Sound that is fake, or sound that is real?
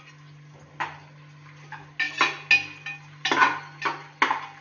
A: real